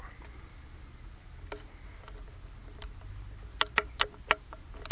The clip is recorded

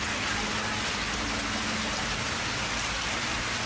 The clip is recorded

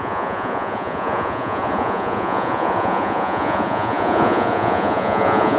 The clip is remade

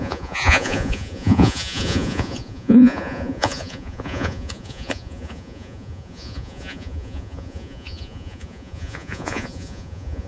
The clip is remade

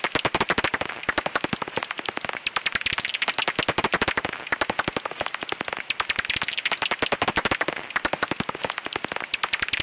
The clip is recorded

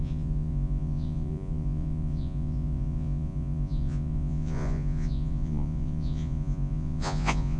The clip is remade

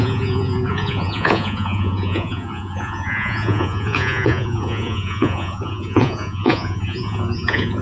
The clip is remade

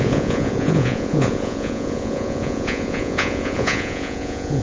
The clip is remade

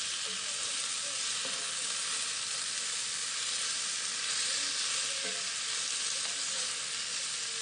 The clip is recorded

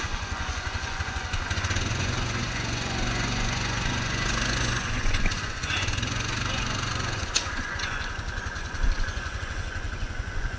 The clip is remade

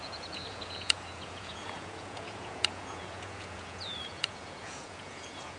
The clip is remade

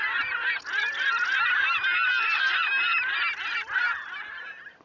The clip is recorded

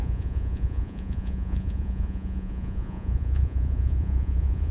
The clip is remade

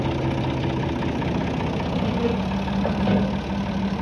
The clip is recorded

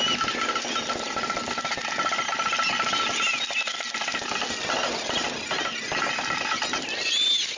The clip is recorded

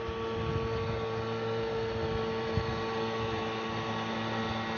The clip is recorded